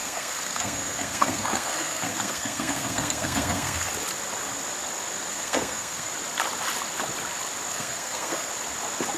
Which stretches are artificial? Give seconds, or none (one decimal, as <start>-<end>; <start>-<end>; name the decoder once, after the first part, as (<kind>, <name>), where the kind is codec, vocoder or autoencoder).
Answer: 0.0-3.9 (codec, SNAC); 5.3-6.1; 7.7-8.5